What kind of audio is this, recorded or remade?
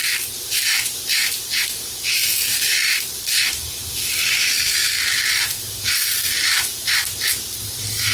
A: remade